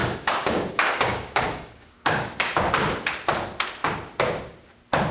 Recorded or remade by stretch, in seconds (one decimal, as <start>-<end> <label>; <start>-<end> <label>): 0.0-2.7 remade; 2.7-5.1 recorded